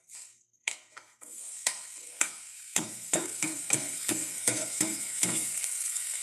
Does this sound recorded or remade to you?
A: remade